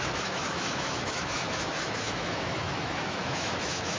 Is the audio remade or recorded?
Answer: remade